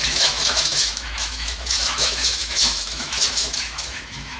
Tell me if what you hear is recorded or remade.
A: remade